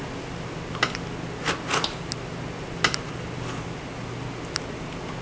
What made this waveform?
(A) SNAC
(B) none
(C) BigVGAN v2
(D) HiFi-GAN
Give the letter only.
B